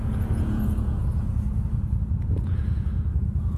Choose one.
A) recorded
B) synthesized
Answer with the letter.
B